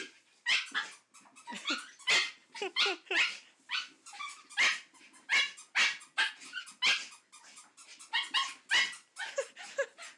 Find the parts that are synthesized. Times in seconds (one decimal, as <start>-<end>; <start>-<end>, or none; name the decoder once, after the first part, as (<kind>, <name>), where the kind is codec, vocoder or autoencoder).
none